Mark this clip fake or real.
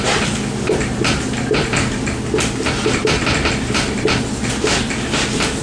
real